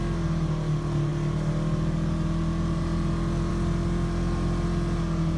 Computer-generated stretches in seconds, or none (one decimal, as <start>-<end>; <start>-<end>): none